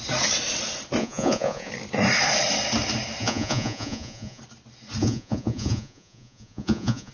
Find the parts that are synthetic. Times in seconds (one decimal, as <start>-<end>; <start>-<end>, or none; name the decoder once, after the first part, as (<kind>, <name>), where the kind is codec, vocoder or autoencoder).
1.0-1.7 (vocoder, Vocos); 3.2-4.4; 5.0-7.1